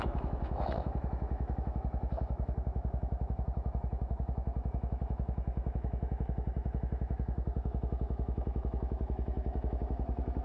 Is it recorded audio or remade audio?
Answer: remade